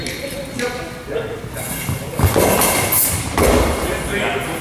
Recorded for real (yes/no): yes